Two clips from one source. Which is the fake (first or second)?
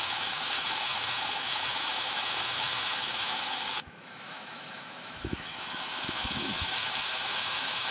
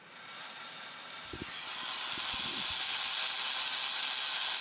first